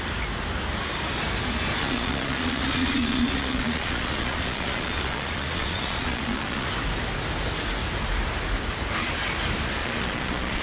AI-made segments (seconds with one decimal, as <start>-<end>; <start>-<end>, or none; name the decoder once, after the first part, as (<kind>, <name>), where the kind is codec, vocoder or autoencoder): 1.8-6.7 (vocoder, Vocos); 9.8-10.6